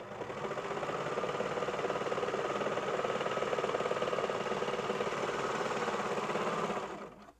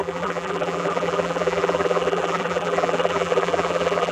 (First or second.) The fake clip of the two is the second